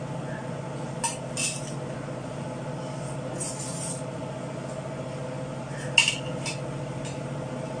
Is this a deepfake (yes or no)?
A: no